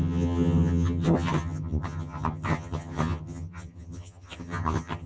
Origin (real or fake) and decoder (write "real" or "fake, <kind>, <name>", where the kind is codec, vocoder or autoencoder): fake, vocoder, HiFi-GAN